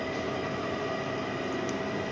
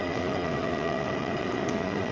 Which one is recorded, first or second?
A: first